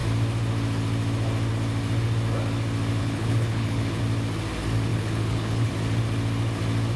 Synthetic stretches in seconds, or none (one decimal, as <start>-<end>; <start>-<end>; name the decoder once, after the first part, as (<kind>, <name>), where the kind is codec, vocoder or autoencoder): 3.0-4.0 (codec, HILCodec); 4.9-5.7